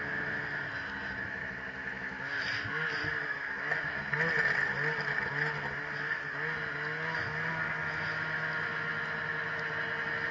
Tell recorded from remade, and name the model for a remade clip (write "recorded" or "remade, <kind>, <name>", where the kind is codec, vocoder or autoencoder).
recorded